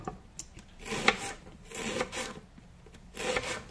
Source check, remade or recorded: recorded